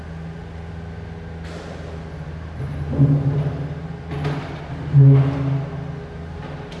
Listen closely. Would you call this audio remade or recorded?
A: recorded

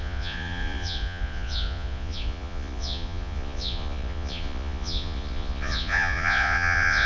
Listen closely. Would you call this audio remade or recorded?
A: remade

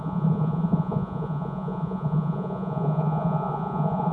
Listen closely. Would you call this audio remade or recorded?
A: remade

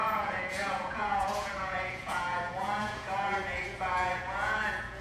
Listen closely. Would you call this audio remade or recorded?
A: remade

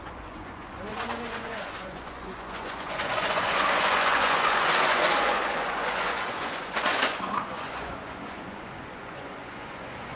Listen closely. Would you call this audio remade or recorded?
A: remade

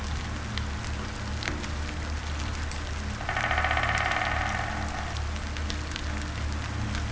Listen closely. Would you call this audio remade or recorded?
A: recorded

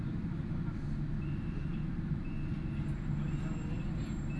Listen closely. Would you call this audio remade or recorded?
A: recorded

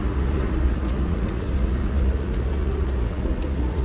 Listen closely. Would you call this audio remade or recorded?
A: remade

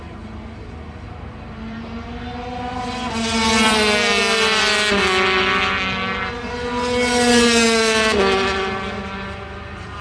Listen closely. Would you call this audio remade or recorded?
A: recorded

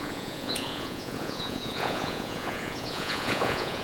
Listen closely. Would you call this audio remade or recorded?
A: remade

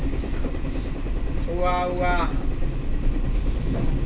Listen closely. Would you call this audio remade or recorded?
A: recorded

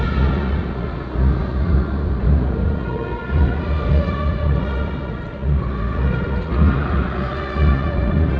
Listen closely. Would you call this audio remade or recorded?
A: remade